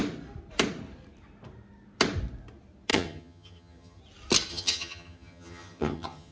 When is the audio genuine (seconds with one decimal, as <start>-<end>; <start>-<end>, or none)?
0.0-2.9; 4.0-4.5